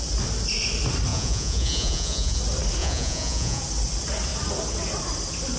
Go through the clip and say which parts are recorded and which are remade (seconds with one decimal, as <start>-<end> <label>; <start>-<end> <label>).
0.0-1.1 recorded; 1.1-2.4 remade; 2.4-2.8 recorded; 2.8-3.6 remade; 3.6-5.6 recorded